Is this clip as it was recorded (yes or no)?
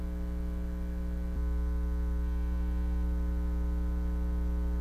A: yes